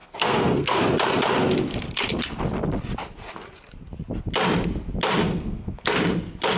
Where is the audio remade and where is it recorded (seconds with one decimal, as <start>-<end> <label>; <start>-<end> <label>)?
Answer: 0.0-0.8 remade; 0.8-5.2 recorded; 5.2-6.0 remade; 6.0-6.6 recorded